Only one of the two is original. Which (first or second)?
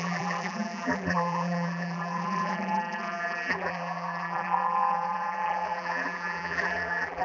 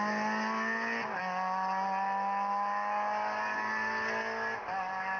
second